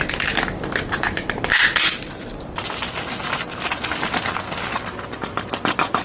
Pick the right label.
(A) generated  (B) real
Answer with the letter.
B